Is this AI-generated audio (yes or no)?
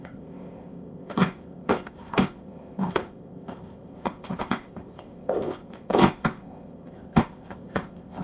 yes